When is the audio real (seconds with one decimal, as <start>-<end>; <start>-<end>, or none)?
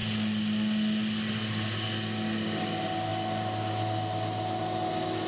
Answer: 0.0-5.3